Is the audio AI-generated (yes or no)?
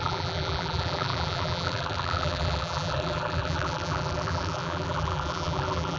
yes